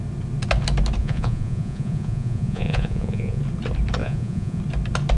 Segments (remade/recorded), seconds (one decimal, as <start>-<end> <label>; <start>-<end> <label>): 0.0-1.0 recorded; 1.0-3.4 remade; 3.4-4.0 recorded; 4.0-4.6 remade; 4.6-5.2 recorded